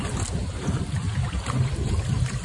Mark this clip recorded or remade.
recorded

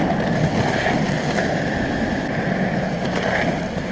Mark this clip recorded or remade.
recorded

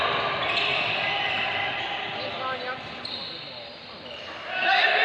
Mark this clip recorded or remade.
remade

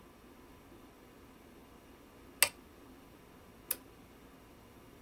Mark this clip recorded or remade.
recorded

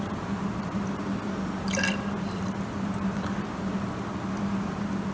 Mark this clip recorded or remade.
recorded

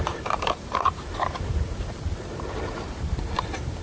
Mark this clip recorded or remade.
remade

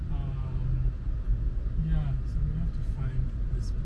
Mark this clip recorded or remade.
recorded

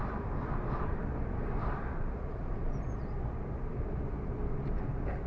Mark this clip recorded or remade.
remade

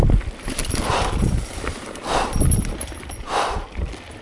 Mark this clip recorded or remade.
remade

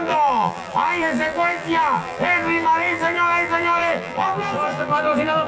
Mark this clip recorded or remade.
remade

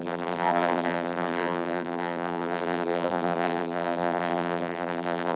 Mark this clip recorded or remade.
remade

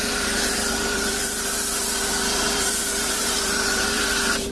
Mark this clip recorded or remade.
remade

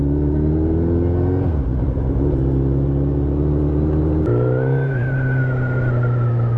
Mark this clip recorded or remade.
recorded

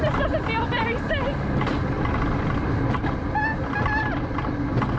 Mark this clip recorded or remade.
recorded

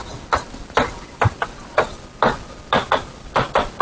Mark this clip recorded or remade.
recorded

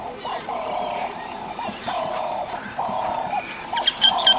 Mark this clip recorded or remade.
remade